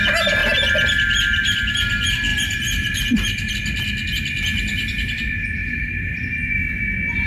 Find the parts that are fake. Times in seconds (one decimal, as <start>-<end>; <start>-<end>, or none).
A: 2.3-3.5; 5.6-6.4